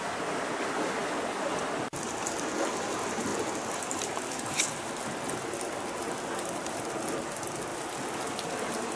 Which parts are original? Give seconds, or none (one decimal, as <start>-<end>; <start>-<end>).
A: 0.0-9.0